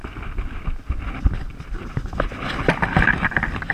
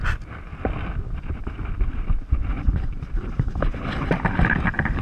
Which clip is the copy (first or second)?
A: second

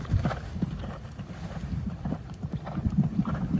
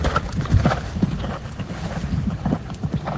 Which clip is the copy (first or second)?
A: first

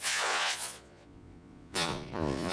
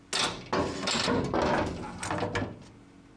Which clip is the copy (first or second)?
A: first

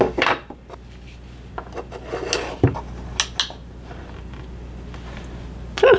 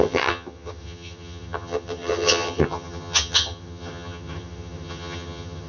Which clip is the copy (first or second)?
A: second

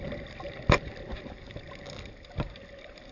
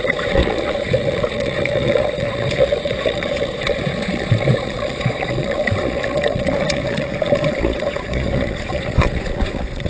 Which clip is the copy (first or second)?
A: second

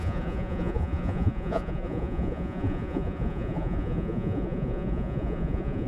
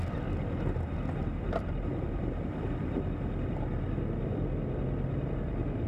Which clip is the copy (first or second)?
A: first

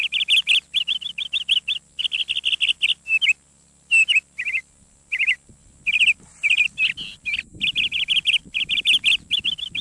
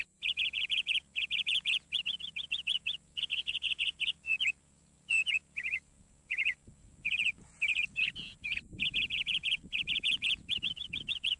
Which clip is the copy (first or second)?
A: second